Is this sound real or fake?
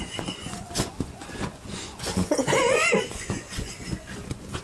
fake